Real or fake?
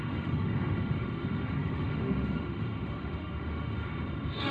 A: fake